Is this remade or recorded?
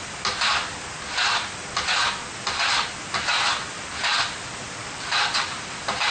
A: recorded